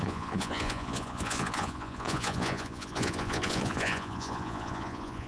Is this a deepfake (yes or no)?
yes